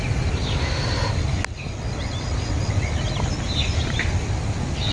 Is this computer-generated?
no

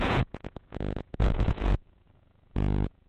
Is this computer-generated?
yes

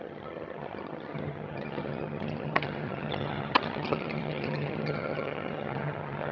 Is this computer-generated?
yes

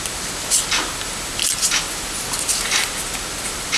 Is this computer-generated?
no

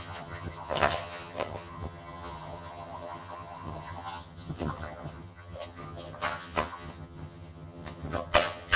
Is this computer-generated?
yes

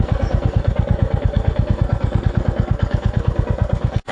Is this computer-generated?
yes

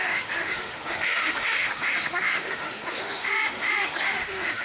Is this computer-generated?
yes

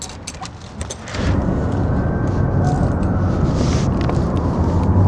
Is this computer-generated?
no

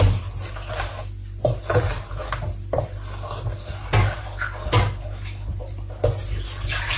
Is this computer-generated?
no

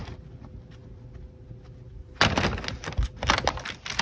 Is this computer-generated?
no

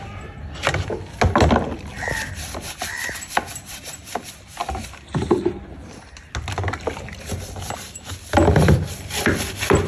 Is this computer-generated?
no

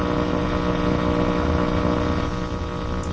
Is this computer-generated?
no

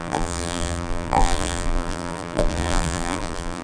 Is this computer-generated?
yes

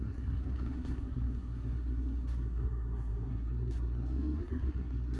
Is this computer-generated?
yes